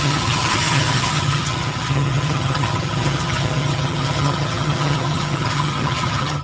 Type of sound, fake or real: fake